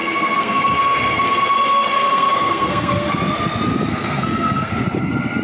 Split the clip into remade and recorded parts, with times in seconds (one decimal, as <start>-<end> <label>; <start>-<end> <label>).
0.0-3.2 remade; 3.2-3.9 recorded; 3.9-4.7 remade; 4.7-5.4 recorded